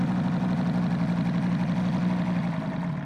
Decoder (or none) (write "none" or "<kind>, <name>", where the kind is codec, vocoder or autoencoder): none